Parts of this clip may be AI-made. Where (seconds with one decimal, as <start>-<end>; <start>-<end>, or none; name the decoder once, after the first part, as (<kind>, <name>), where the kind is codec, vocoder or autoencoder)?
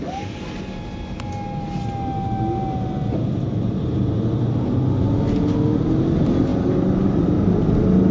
none